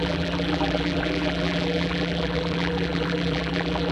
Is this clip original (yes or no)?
no